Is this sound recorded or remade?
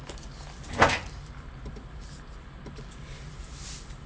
recorded